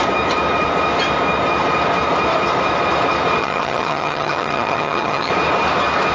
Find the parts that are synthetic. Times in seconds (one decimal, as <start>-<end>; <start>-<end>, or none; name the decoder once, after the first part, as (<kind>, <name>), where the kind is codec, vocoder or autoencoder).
3.4-5.3 (vocoder, HiFi-GAN)